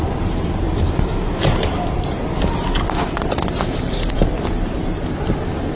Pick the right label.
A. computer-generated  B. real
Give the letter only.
A